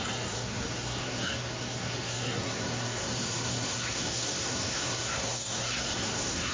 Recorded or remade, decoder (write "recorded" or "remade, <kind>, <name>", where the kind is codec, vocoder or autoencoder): remade, codec, SNAC